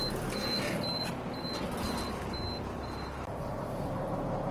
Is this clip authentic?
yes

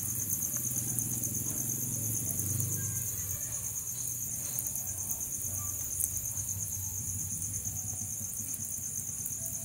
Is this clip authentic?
yes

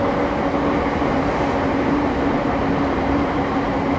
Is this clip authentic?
no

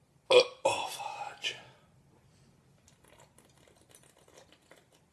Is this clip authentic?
yes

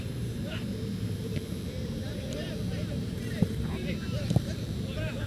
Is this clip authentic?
no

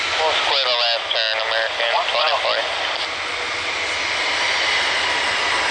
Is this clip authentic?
yes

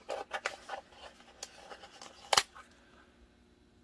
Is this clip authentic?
yes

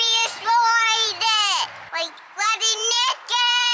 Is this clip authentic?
no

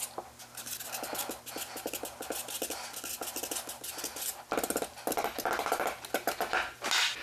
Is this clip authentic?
yes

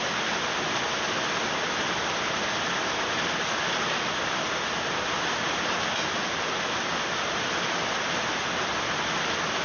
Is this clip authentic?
yes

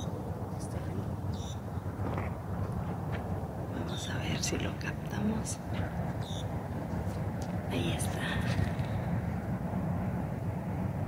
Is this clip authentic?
no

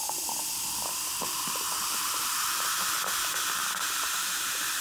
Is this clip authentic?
yes